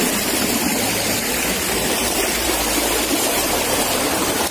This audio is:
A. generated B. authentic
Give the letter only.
A